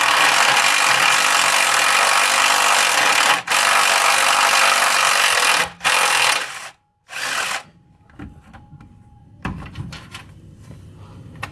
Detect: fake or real real